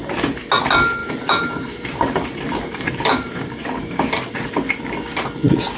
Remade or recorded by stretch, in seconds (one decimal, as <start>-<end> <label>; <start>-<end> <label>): 0.0-1.0 recorded; 1.0-4.5 remade; 4.5-5.8 recorded